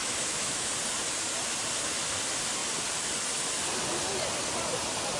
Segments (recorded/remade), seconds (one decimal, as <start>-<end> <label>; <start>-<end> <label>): 0.0-0.7 remade; 0.7-5.2 recorded